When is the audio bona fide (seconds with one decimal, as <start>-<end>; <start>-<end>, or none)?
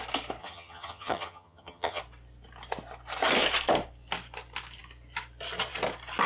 0.0-0.4; 2.0-6.3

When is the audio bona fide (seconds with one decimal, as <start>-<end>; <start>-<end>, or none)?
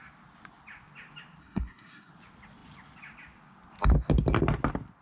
0.0-1.4; 2.1-5.0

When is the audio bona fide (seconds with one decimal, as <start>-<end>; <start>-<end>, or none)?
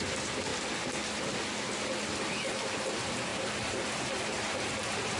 0.5-2.2